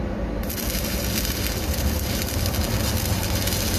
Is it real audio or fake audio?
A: real